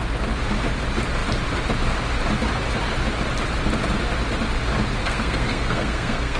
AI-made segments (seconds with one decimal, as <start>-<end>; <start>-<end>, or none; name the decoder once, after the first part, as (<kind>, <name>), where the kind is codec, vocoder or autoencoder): 5.0-6.4 (codec, SNAC)